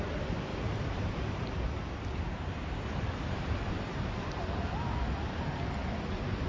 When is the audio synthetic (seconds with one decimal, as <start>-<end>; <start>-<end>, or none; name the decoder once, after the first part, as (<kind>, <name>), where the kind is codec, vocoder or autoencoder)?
0.5-4.1 (vocoder, BigVGAN v2)